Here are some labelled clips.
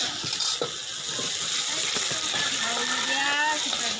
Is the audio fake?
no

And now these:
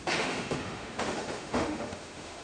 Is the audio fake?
yes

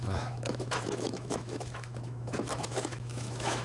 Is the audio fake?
yes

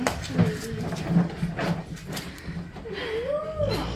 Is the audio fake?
no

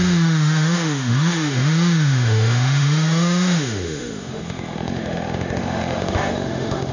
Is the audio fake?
yes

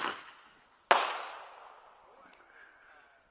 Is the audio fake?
no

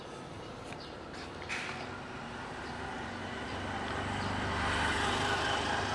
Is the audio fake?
no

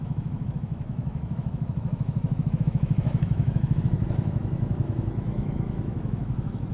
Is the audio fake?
yes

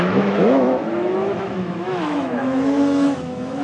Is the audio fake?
yes